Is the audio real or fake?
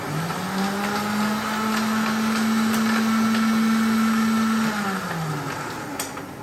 real